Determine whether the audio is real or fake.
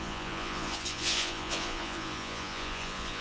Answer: fake